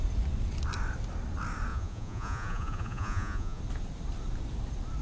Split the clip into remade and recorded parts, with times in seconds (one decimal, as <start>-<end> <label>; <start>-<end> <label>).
0.0-1.7 recorded; 1.7-3.6 remade; 3.6-5.0 recorded